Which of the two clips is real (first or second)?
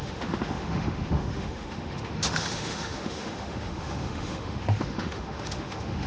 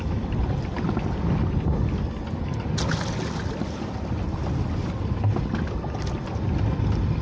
second